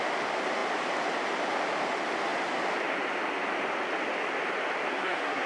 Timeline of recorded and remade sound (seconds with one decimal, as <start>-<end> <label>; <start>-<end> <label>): 0.0-4.9 recorded; 4.9-5.5 remade

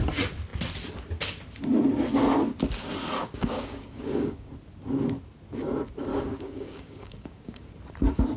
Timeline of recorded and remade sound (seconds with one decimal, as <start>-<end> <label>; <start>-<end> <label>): 0.0-3.2 recorded; 3.2-4.5 remade; 4.5-6.1 recorded; 6.1-7.6 remade; 7.6-8.4 recorded

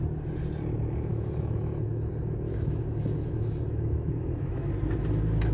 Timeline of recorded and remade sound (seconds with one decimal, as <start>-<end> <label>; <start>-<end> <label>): 0.0-1.1 recorded; 1.1-2.1 remade; 2.1-2.5 recorded; 2.5-4.7 remade; 4.7-5.5 recorded

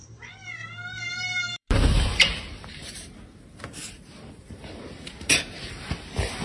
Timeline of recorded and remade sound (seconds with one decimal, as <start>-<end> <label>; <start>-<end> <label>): 0.0-6.4 remade

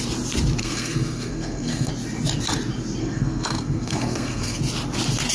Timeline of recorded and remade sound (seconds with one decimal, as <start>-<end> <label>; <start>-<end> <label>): 0.0-0.6 recorded; 0.6-1.9 remade; 1.9-3.0 recorded; 3.0-4.6 remade; 4.6-5.3 recorded

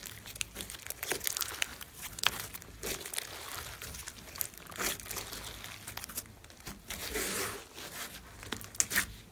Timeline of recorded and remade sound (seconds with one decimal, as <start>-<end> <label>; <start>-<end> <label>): 0.0-1.7 recorded; 1.7-2.3 remade; 2.3-9.3 recorded